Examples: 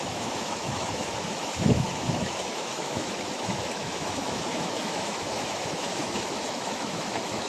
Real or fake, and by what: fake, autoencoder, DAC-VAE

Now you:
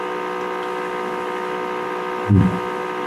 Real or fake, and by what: real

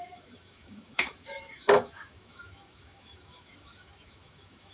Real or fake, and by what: fake, autoencoder, DAC-VAE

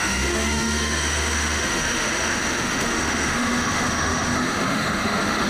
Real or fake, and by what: fake, autoencoder, DAC-VAE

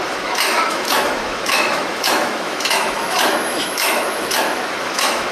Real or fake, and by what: fake, autoencoder, DAC-VAE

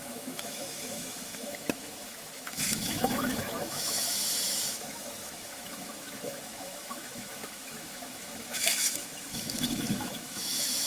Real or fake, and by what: fake, autoencoder, DAC-VAE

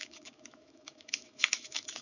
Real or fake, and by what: fake, autoencoder, DAC-VAE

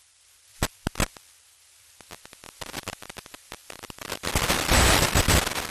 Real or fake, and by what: real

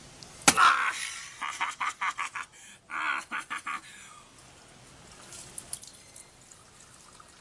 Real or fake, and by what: real